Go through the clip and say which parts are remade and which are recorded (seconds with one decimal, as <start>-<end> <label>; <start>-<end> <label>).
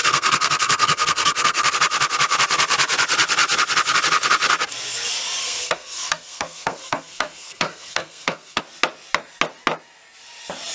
0.0-1.7 remade; 1.7-5.4 recorded; 5.4-8.6 remade; 8.6-10.7 recorded